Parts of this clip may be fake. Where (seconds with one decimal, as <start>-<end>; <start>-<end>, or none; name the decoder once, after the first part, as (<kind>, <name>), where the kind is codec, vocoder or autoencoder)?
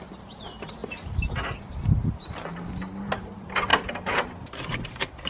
3.7-5.3 (vocoder, BigVGAN v2)